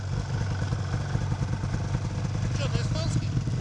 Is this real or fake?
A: real